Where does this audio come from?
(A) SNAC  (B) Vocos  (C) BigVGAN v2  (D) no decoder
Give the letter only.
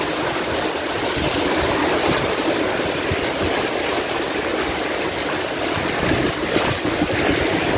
D